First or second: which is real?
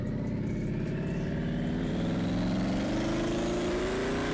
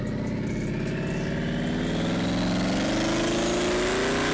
second